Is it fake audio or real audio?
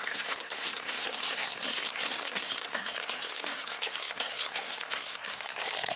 fake